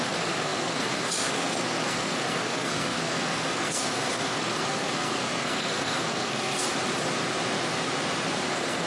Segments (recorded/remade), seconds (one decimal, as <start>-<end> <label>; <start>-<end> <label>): 0.0-6.7 remade; 6.7-8.5 recorded; 8.5-8.9 remade

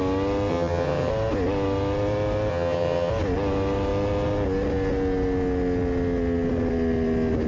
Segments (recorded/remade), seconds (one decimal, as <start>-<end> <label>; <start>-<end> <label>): 0.0-0.5 recorded; 0.5-1.1 remade; 1.1-2.5 recorded; 2.5-3.1 remade; 3.1-7.5 recorded